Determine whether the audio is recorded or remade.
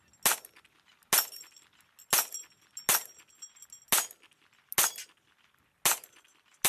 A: recorded